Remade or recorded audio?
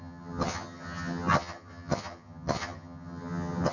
remade